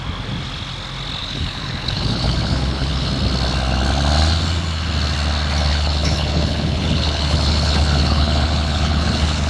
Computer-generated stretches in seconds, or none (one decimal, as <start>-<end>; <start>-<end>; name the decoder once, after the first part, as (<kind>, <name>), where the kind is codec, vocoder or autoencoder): 1.2-3.1 (codec, HILCodec); 5.7-9.5